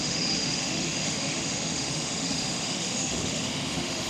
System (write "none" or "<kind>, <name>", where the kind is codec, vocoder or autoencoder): autoencoder, DAC-VAE